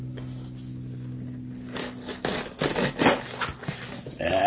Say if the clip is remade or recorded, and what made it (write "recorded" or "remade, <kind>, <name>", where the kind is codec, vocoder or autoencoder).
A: recorded